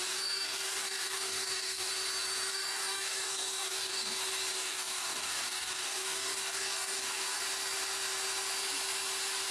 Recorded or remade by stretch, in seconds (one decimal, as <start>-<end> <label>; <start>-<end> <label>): 0.0-1.9 remade; 1.9-2.5 recorded; 2.5-4.1 remade; 4.1-4.5 recorded; 4.5-7.4 remade; 7.4-9.5 recorded